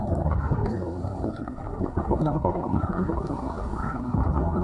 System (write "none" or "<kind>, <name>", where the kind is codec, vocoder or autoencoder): codec, SNAC